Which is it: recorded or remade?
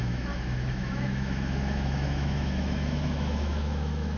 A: remade